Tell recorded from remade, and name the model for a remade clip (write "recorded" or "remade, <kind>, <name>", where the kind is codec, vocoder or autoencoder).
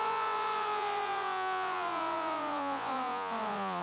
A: remade, vocoder, Vocos